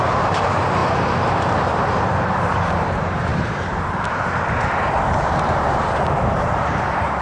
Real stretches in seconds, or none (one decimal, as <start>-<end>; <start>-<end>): 0.8-1.9